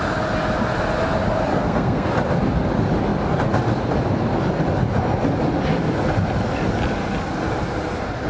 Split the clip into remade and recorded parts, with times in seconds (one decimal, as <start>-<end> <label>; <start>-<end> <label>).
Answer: 0.0-1.5 recorded; 1.5-2.1 remade; 2.1-8.3 recorded